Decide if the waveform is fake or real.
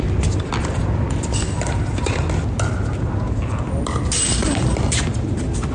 real